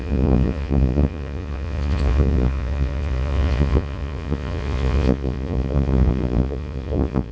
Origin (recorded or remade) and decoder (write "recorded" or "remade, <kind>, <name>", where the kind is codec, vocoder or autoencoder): remade, vocoder, Vocos